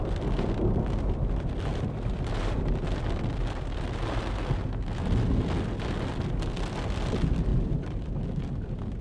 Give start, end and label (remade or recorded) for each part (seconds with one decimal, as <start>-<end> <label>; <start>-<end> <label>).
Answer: 0.0-7.5 recorded; 7.5-8.2 remade; 8.2-9.0 recorded